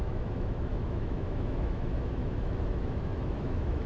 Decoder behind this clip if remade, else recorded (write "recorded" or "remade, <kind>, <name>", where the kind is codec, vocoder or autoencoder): remade, autoencoder, DAC-VAE